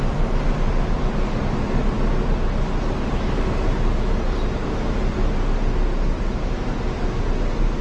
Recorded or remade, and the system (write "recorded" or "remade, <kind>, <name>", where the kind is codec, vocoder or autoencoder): recorded